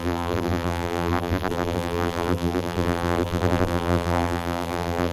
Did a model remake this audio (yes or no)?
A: yes